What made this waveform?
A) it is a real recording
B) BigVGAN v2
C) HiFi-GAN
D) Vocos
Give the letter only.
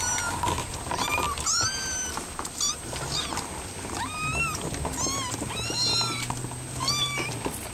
A